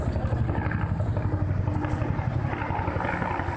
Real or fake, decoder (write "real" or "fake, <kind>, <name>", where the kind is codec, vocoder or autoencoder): real